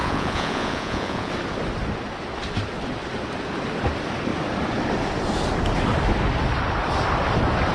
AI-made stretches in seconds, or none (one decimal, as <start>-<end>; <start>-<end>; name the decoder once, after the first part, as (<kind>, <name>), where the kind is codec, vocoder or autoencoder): 0.0-1.3 (vocoder, Vocos)

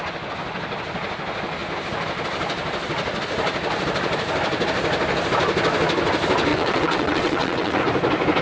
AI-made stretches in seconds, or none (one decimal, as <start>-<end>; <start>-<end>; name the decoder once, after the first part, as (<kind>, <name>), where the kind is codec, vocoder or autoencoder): 6.5-7.8 (vocoder, WaveNeXt)

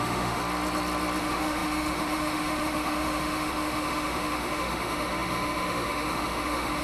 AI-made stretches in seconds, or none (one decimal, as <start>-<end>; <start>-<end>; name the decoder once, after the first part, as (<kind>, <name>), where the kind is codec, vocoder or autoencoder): 0.0-0.4 (autoencoder, DAC-VAE); 1.2-6.8

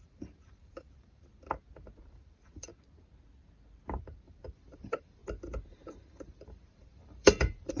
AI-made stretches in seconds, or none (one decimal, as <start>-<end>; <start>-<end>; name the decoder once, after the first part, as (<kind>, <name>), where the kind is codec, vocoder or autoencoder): 0.0-1.3 (vocoder, BigVGAN v2); 2.0-2.7; 4.0-5.2; 5.7-7.8

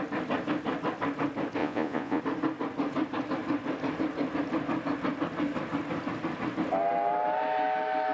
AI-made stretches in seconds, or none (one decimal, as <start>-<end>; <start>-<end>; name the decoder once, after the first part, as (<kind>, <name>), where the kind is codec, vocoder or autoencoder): 1.6-2.2 (vocoder, Vocos)

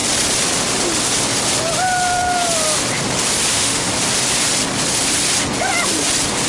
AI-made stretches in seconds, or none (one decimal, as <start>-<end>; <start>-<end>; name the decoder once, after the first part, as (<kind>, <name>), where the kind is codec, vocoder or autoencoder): 3.5-3.9 (autoencoder, DAC-VAE)